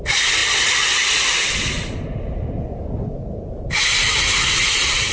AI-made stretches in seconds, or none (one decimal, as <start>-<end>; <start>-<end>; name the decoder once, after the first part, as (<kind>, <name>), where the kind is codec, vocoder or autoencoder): none